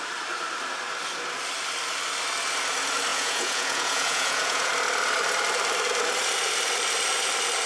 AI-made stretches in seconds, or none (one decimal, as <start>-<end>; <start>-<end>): 3.1-4.7